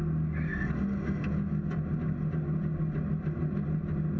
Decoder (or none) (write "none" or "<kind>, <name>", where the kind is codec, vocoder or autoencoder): none